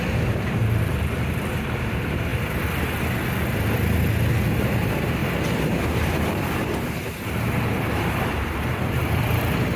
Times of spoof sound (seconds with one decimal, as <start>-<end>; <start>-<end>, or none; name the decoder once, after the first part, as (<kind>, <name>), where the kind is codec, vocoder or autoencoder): 0.0-2.3 (vocoder, BigVGAN v2); 4.3-9.8